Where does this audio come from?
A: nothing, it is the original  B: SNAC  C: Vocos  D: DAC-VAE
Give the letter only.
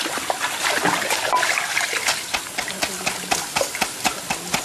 A